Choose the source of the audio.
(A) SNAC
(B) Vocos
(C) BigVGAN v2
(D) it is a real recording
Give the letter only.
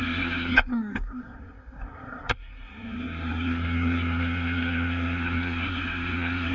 A